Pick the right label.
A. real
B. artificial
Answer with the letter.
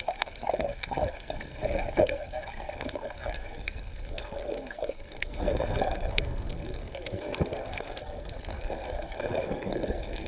B